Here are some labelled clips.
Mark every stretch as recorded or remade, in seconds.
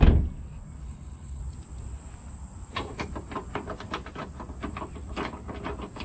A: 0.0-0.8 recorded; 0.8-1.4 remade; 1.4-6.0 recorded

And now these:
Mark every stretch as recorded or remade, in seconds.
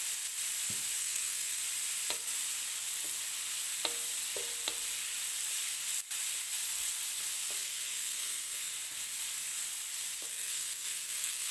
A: 0.0-1.0 recorded; 1.0-1.6 remade; 1.6-7.6 recorded; 7.6-8.7 remade; 8.7-10.3 recorded; 10.3-11.5 remade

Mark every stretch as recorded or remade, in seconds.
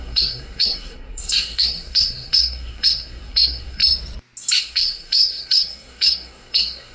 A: 0.0-3.8 remade; 3.8-4.6 recorded; 4.6-6.9 remade